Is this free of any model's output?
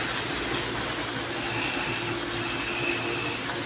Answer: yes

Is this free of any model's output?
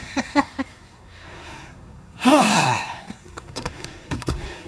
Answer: no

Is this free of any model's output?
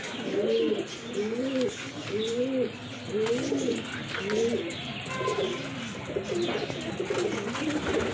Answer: yes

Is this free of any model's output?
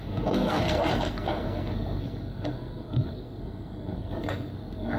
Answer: no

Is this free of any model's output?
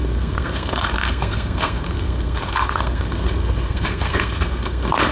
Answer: no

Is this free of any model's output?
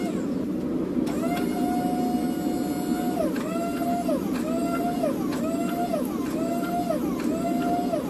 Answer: yes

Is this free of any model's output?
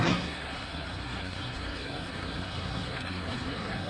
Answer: no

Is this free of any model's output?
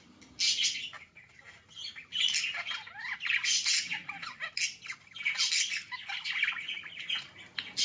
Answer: yes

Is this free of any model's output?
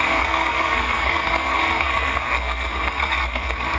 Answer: no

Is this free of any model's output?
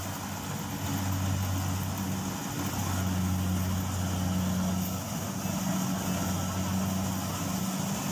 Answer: yes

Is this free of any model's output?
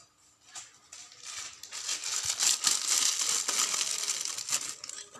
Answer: yes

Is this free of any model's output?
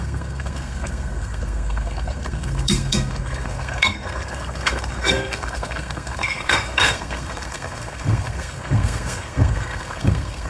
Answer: no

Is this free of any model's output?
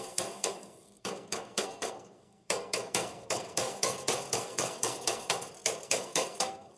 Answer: no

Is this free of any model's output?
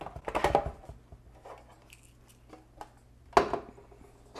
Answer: yes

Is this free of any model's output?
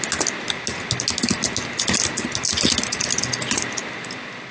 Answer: yes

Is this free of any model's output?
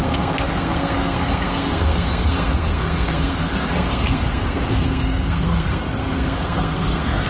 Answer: no